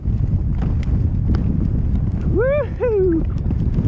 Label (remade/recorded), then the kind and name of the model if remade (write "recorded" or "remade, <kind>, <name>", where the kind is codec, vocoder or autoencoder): recorded